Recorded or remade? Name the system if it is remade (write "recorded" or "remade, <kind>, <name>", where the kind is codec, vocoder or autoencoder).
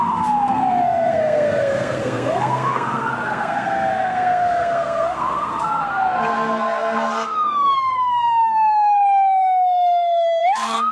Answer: remade, codec, SNAC